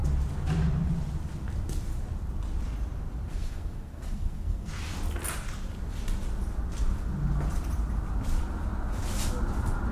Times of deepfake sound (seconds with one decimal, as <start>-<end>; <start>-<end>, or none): 3.3-4.7